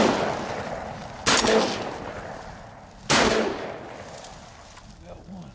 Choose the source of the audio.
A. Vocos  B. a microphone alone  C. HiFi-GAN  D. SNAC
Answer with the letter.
B